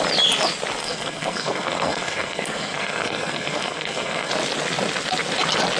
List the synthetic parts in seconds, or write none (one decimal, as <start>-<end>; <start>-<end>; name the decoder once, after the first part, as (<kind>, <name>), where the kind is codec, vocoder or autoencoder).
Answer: 0.8-4.3 (codec, SNAC)